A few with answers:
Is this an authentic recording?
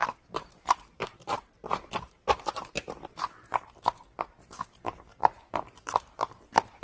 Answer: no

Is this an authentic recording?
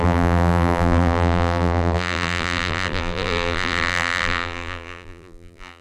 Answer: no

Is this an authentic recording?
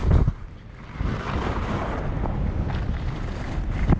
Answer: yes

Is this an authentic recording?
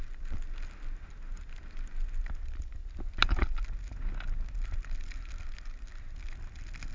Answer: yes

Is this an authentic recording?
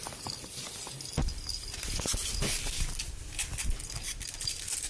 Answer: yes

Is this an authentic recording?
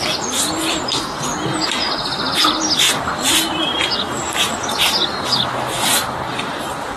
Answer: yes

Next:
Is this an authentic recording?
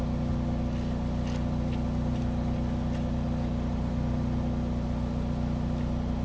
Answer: yes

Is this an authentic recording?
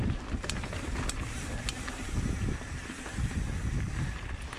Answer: yes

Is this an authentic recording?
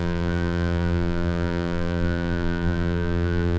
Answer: no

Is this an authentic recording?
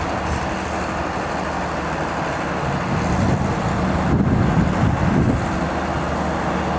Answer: yes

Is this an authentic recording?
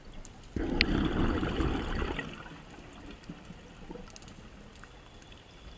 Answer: yes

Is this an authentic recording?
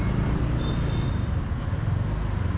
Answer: yes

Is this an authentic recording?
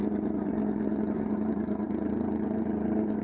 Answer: no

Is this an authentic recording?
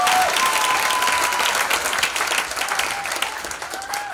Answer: yes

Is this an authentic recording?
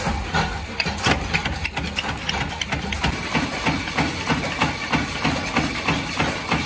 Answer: yes